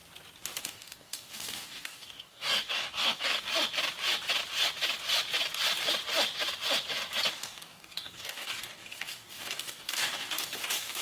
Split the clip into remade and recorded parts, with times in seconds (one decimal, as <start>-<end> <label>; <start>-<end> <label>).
0.0-0.6 recorded; 0.6-3.5 remade; 3.5-7.3 recorded; 7.3-11.0 remade